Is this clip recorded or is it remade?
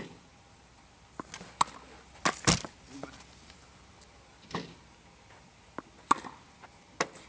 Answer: recorded